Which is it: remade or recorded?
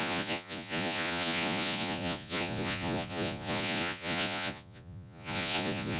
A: remade